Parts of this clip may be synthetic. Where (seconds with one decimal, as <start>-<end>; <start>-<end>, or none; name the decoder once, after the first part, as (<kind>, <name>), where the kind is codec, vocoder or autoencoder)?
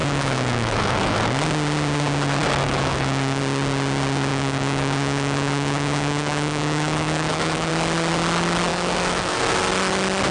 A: 0.0-1.2 (autoencoder, DAC-VAE); 2.6-3.4; 4.3-7.7; 8.7-9.4